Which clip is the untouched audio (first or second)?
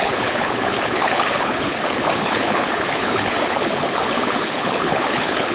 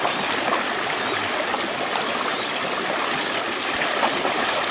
second